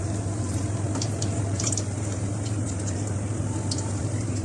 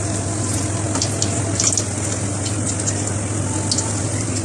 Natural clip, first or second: second